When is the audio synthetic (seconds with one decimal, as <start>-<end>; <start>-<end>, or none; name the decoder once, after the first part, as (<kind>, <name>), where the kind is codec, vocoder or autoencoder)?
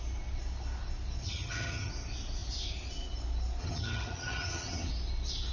1.2-1.9 (vocoder, HiFi-GAN); 3.6-4.9